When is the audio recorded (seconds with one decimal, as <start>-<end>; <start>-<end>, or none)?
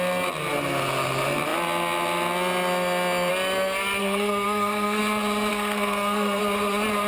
0.0-4.0; 5.0-5.5; 6.4-7.1